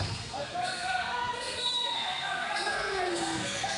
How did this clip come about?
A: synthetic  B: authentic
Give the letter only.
A